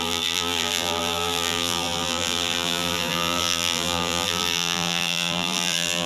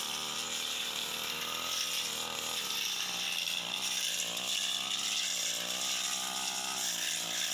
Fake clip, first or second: first